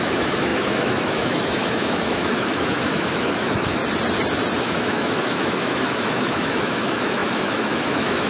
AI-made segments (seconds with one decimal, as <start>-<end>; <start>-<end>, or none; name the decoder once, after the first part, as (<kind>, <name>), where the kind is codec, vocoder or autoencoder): 0.0-3.8 (autoencoder, DAC-VAE); 4.6-8.3